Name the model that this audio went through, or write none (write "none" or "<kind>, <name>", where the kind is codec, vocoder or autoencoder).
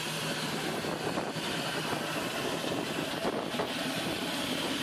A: vocoder, BigVGAN v2